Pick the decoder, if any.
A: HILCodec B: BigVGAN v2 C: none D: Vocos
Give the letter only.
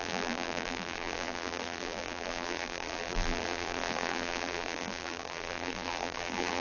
B